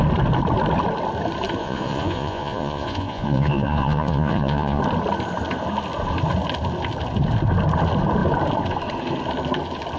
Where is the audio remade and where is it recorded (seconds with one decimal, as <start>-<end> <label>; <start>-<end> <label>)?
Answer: 0.0-1.6 recorded; 1.6-4.8 remade; 4.8-10.0 recorded